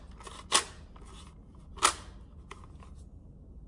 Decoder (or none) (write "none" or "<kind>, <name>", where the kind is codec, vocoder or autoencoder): none